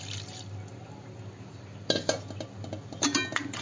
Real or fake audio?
real